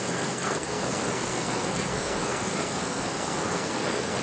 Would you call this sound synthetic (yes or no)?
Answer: yes